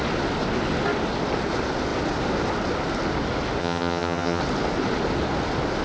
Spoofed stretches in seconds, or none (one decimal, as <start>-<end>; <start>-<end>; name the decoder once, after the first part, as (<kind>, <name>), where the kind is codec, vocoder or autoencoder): 3.6-4.4 (vocoder, HiFi-GAN)